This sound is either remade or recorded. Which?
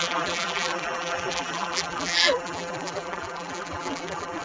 remade